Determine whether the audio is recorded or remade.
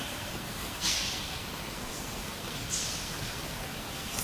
remade